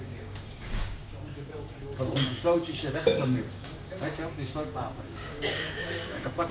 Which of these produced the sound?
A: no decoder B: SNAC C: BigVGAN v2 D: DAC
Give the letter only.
D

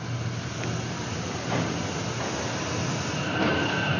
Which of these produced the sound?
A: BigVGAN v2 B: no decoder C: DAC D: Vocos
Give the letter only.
B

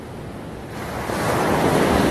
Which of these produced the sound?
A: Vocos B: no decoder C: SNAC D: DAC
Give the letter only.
B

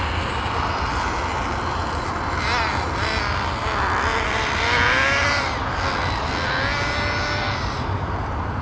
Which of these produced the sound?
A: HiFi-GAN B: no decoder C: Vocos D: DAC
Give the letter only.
B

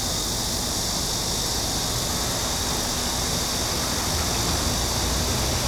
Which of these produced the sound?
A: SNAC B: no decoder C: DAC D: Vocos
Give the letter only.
B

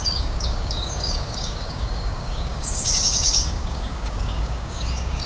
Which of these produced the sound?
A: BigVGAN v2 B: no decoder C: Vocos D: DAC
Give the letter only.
D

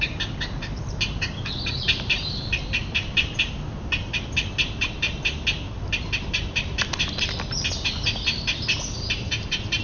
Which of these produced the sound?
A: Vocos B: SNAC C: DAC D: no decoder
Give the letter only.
D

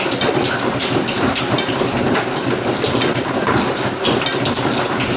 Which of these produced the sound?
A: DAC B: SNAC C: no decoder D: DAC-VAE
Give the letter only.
C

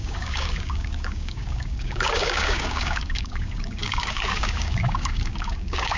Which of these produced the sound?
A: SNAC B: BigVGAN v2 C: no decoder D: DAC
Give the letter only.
D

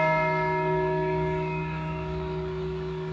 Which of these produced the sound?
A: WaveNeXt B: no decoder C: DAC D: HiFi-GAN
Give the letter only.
C